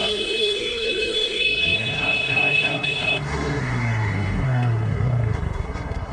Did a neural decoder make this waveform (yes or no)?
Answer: yes